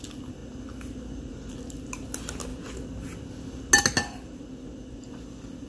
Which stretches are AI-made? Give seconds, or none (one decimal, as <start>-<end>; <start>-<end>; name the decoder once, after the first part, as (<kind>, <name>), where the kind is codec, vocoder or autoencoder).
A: none